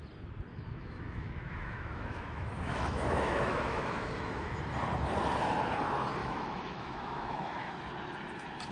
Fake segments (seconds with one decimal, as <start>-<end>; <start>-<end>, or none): 0.5-4.6; 6.2-7.7